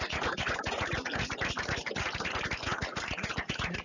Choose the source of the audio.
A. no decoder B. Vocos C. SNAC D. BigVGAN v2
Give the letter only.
A